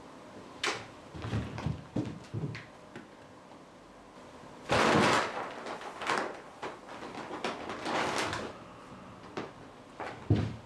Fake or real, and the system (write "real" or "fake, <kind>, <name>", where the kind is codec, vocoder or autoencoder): real